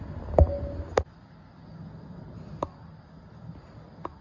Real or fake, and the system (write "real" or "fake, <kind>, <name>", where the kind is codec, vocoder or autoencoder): real